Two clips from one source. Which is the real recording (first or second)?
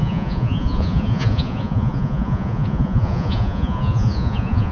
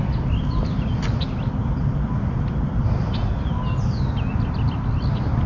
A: second